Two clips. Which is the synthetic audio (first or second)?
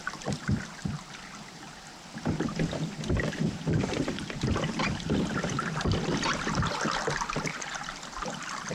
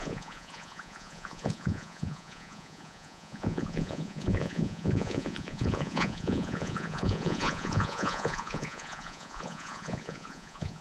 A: second